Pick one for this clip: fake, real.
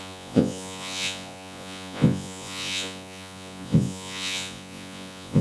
fake